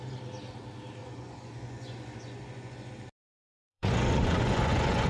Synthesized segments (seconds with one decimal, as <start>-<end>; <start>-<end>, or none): 1.0-2.9; 3.5-5.1